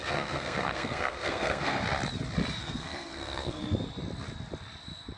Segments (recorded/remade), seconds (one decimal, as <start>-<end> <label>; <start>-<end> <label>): 0.0-1.8 remade; 1.8-2.6 recorded; 2.6-3.6 remade; 3.6-5.2 recorded